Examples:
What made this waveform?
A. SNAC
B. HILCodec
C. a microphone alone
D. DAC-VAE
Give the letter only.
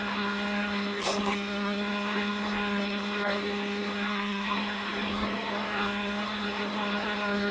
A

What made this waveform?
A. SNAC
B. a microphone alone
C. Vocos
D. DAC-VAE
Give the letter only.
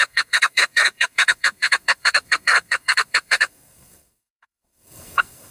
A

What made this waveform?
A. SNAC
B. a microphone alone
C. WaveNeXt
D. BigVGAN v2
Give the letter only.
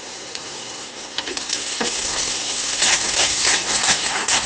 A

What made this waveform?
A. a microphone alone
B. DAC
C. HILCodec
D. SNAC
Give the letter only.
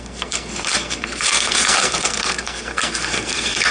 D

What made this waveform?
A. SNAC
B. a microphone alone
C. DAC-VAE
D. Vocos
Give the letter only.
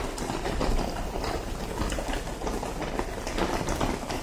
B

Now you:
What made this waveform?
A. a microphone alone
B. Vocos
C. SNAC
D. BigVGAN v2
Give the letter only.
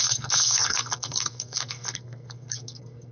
C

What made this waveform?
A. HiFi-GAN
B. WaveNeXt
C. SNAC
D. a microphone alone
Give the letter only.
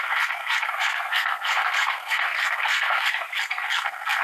C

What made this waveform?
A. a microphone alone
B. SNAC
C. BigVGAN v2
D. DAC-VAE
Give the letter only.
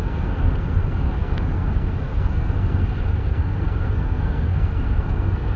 B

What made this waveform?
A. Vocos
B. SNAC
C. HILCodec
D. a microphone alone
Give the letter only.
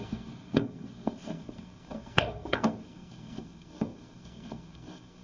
B